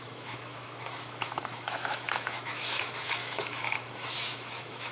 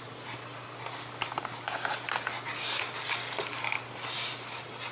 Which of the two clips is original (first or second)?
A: second